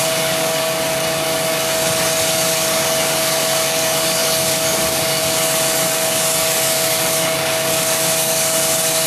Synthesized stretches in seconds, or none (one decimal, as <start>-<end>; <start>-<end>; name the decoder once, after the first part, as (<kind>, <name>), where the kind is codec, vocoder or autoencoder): 0.0-9.1 (codec, DAC)